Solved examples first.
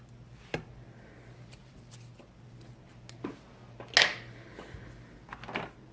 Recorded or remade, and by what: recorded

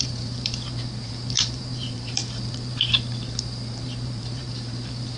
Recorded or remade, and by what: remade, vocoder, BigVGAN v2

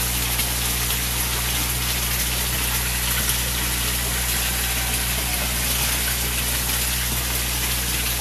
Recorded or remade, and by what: recorded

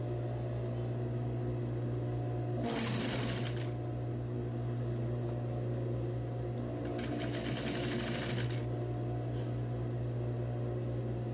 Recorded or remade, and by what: recorded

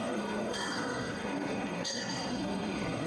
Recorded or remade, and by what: remade, codec, SNAC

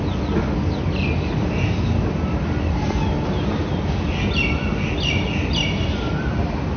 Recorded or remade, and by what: recorded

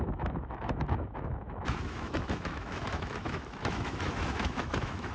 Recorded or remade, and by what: remade, autoencoder, DAC-VAE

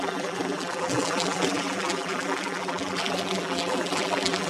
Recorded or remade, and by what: remade, vocoder, BigVGAN v2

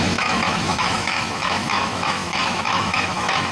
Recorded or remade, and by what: remade, autoencoder, DAC-VAE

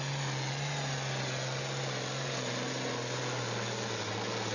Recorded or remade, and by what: recorded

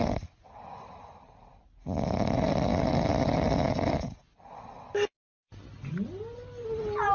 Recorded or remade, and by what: recorded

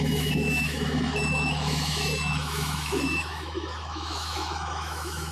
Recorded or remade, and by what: remade, autoencoder, DAC-VAE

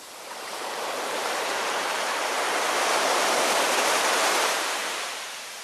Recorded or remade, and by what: remade, vocoder, BigVGAN v2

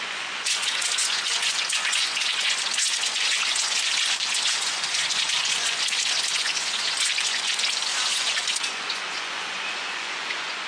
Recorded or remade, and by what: remade, vocoder, Vocos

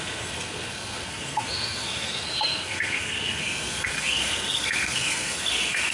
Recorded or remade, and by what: remade, codec, SNAC